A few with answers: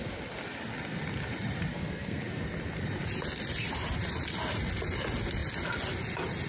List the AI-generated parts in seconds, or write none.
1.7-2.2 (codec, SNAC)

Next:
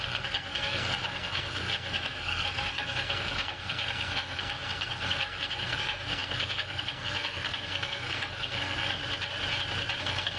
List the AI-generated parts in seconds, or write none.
0.0-9.0 (codec, SNAC); 10.0-10.4

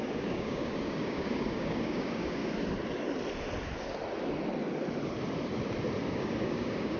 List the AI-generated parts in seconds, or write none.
0.0-2.4 (codec, DAC); 6.1-7.0